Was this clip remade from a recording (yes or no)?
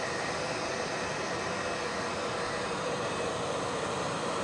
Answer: no